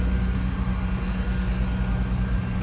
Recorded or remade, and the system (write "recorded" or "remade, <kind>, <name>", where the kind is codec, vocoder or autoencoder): recorded